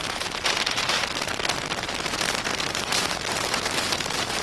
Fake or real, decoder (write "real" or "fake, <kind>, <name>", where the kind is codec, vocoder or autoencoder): fake, vocoder, BigVGAN v2